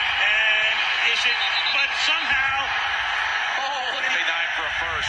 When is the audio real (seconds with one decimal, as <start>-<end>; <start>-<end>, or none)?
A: 0.0-3.3; 4.1-5.1